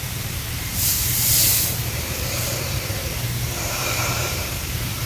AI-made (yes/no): yes